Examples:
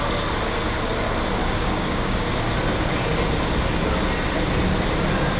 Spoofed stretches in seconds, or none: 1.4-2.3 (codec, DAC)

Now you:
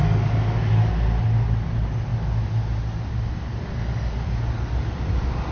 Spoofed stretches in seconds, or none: 0.0-0.9 (codec, DAC)

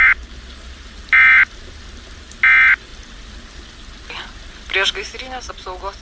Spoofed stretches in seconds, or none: none

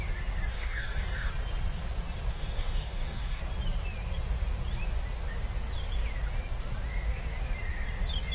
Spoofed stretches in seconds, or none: 0.5-1.3 (codec, DAC); 2.3-3.4

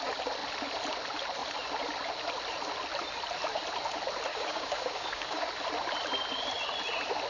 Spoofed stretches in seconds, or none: 4.3-5.5 (codec, DAC)

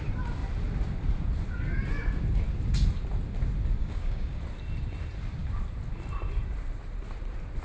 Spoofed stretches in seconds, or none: 3.8-4.4 (codec, DAC)